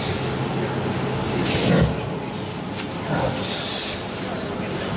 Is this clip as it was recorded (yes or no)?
yes